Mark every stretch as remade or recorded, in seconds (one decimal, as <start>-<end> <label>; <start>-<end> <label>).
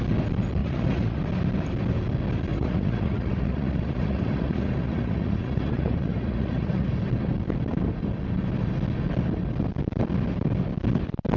0.0-0.6 recorded; 0.6-1.2 remade; 1.2-2.5 recorded; 2.5-6.9 remade; 6.9-11.4 recorded